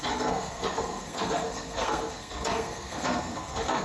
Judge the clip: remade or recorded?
remade